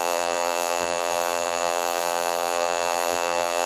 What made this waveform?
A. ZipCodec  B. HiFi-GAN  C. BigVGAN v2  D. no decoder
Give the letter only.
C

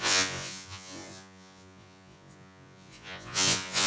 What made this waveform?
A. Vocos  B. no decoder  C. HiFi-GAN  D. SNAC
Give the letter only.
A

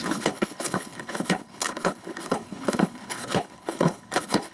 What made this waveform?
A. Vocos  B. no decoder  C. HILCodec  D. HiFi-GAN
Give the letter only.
C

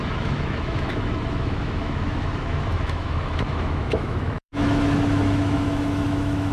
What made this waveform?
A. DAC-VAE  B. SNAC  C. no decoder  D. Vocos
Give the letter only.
A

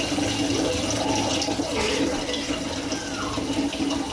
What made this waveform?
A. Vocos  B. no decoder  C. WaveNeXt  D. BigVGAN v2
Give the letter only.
B